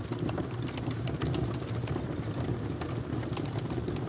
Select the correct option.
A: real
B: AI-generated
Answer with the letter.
A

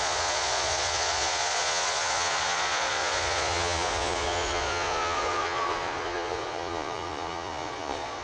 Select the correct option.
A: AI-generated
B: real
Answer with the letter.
A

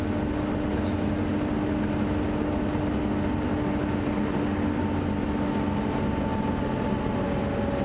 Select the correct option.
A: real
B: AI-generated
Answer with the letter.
A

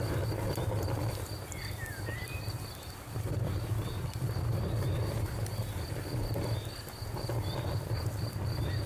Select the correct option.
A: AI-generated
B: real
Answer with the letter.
B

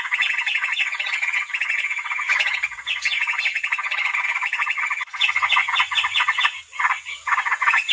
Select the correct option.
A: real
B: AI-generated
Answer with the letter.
B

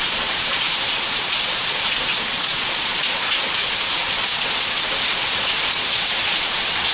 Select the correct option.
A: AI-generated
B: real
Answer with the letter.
A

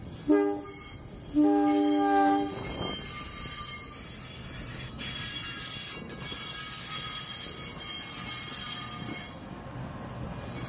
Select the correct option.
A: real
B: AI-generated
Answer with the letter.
A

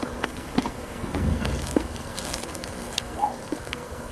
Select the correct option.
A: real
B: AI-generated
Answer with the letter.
B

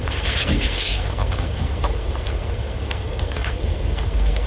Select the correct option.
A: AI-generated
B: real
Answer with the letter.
A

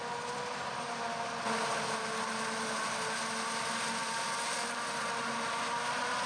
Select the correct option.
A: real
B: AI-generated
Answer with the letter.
A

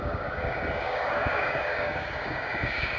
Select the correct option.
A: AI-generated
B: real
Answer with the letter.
A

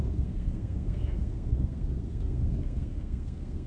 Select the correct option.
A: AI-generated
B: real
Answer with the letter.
A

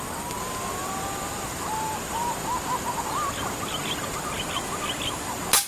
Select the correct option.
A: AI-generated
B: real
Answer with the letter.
B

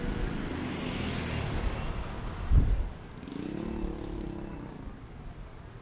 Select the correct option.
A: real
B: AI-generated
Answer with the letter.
A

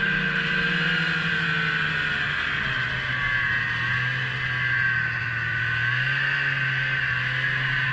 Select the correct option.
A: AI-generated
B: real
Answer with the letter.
B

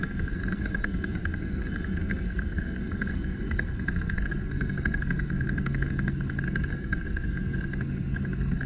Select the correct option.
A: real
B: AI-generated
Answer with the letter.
B